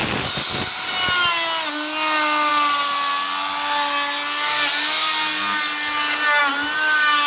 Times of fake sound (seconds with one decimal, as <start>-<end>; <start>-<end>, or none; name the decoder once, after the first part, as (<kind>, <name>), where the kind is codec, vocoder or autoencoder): none